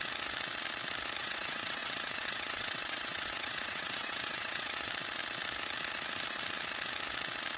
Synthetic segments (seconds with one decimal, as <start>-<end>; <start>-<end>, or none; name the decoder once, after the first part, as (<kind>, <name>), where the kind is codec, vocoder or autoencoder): 1.2-4.9 (vocoder, WaveNeXt)